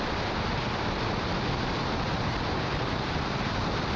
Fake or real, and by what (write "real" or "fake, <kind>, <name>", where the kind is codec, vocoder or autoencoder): real